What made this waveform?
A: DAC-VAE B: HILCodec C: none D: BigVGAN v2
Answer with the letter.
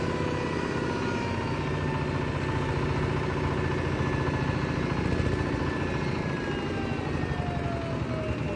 C